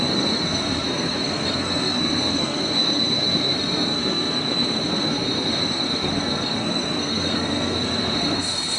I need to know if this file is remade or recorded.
remade